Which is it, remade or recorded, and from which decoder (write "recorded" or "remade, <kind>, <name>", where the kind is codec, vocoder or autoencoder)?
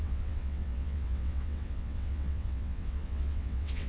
remade, vocoder, WaveNeXt